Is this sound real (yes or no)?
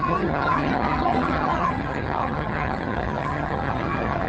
no